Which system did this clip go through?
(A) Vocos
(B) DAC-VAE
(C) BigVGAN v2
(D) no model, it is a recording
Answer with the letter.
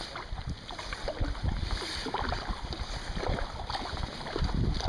D